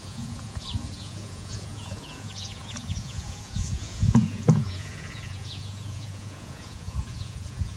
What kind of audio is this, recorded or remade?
remade